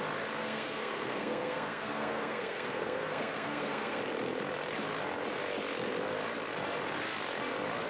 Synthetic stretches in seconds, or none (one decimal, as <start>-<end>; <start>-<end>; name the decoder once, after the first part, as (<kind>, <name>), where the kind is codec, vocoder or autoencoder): 0.4-4.0 (codec, SNAC)